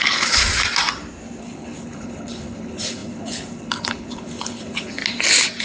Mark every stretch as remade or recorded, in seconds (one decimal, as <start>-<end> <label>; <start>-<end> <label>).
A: 0.0-0.4 remade; 0.4-1.4 recorded; 1.4-5.0 remade; 5.0-5.6 recorded